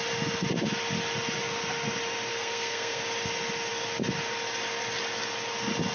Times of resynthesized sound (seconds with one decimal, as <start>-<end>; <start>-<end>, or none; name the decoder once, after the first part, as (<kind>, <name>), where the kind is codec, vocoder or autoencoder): 2.3-3.0 (codec, SNAC)